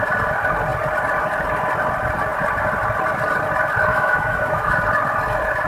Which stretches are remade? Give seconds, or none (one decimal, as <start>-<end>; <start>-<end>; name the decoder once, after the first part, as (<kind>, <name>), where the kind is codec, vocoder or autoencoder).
3.9-4.8 (autoencoder, DAC-VAE)